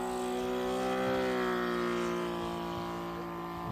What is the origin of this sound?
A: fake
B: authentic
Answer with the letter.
B